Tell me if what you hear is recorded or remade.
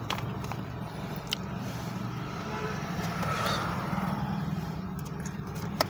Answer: remade